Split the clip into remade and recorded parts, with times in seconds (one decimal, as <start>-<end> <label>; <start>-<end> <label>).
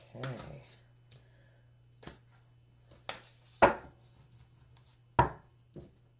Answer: 0.0-6.2 recorded